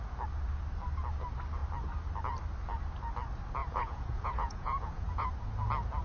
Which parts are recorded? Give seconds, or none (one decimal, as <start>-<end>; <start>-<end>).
0.0-3.6; 5.3-6.0